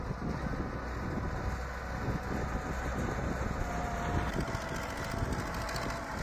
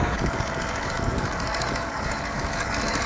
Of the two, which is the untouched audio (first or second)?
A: first